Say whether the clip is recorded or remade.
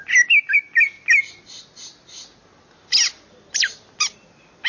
recorded